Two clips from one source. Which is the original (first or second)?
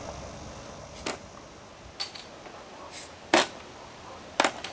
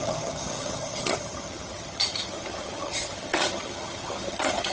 first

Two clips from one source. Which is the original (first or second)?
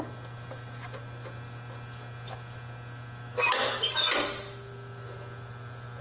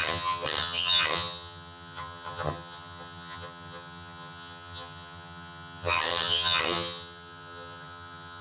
first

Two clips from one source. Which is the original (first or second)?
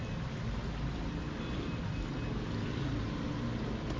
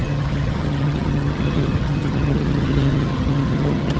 first